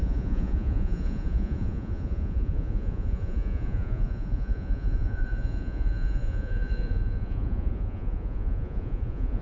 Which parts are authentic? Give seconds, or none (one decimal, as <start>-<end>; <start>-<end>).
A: none